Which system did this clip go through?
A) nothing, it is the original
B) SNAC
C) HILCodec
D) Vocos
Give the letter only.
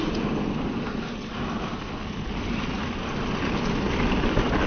A